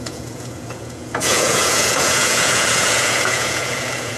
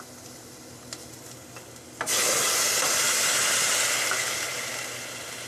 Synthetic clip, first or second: first